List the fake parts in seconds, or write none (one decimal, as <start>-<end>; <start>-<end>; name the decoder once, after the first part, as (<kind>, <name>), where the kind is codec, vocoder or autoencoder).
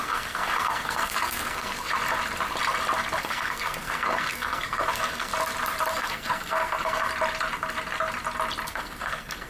0.0-1.9 (codec, SNAC); 3.2-5.3; 5.9-7.1; 8.7-9.5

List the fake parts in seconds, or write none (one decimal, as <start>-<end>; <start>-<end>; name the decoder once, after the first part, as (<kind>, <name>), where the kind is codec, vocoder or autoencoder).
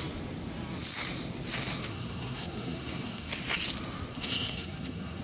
1.9-3.3 (codec, SNAC); 4.1-5.2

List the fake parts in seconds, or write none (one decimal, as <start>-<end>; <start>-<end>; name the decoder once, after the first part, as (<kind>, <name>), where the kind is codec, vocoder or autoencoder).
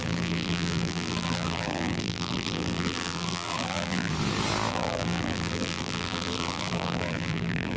0.0-4.1 (vocoder, BigVGAN v2); 4.7-7.8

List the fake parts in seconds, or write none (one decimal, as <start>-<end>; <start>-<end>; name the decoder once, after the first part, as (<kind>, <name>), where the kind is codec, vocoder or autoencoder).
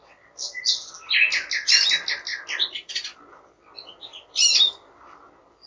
none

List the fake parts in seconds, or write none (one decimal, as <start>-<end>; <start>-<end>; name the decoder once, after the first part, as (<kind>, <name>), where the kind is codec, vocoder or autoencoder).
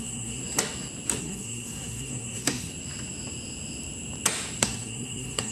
0.0-0.4 (codec, SNAC); 1.2-2.7; 4.6-5.5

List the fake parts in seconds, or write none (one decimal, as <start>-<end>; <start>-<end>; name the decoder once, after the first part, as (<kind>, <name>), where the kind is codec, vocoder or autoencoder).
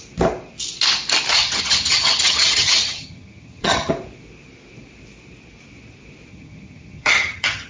1.3-3.9 (vocoder, HiFi-GAN); 6.3-7.7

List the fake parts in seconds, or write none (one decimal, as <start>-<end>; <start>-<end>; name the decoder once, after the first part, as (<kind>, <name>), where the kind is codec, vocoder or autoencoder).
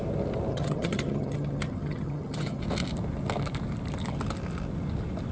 0.5-2.6 (vocoder, HiFi-GAN)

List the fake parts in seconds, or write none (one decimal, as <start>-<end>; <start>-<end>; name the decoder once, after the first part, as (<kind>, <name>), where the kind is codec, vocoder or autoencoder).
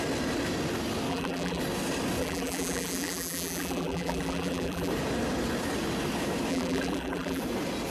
1.1-1.6 (vocoder, BigVGAN v2); 2.2-4.9; 6.5-7.4